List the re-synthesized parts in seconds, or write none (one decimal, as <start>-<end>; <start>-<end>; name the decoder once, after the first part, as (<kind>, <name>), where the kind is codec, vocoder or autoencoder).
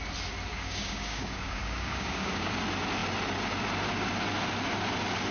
0.5-2.5 (codec, DAC)